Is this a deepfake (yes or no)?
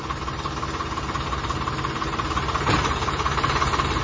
no